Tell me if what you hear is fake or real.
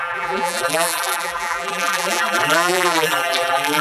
fake